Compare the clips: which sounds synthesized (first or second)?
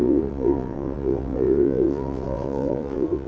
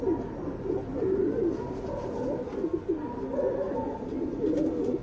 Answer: first